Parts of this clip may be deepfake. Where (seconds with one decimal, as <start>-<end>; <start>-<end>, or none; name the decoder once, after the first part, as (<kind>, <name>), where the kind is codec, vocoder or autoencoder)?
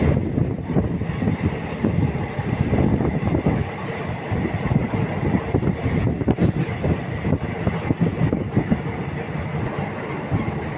none